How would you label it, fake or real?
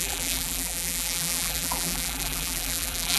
fake